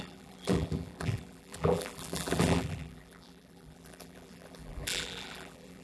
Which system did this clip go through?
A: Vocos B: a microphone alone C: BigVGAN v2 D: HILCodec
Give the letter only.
C